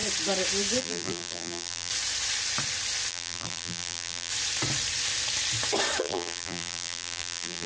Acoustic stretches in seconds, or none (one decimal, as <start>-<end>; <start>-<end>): 0.0-0.8; 1.9-3.1; 4.3-6.0